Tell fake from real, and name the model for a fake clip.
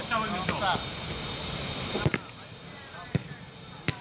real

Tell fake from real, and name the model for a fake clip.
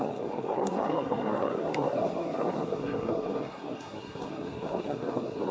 fake, codec, SNAC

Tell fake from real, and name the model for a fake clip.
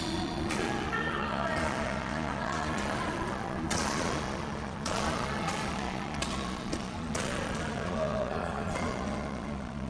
fake, vocoder, Vocos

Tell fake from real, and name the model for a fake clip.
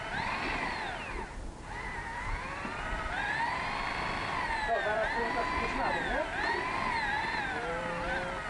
real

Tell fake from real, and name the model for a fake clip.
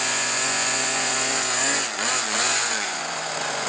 fake, vocoder, Vocos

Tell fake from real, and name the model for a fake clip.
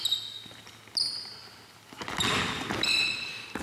real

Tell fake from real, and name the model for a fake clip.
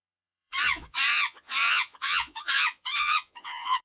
fake, vocoder, Vocos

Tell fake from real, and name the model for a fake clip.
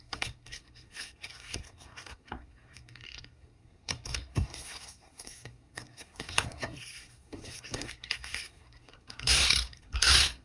fake, codec, SNAC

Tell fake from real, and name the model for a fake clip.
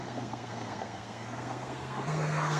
fake, codec, SNAC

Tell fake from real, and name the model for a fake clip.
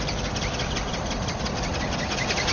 real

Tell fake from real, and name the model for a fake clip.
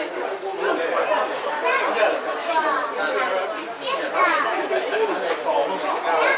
real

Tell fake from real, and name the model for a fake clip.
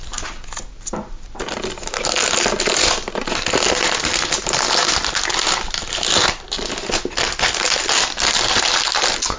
real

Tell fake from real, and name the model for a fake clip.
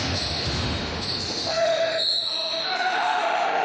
fake, autoencoder, DAC-VAE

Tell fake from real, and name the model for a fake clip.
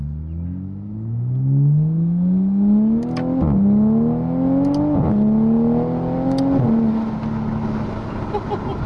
real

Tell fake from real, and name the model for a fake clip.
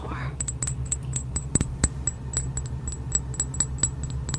real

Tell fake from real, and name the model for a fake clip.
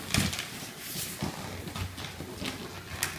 real